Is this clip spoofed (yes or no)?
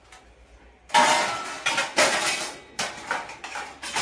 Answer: no